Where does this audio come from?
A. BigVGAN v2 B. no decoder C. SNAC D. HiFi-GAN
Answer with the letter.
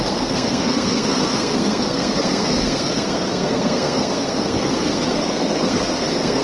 C